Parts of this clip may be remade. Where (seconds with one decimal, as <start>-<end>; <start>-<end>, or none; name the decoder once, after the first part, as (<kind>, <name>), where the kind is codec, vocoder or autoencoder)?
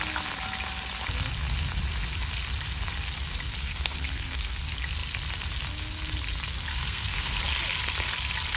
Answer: 3.6-4.6 (codec, SNAC); 6.7-7.3